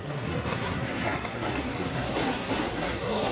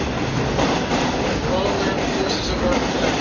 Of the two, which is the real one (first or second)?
second